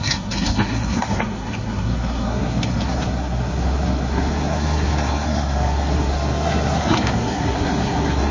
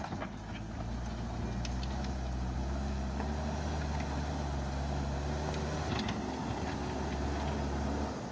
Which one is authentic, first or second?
second